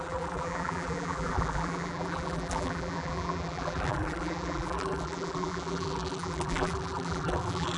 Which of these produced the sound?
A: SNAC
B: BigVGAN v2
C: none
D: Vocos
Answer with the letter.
B